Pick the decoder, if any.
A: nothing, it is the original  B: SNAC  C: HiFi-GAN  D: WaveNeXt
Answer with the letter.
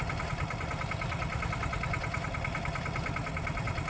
A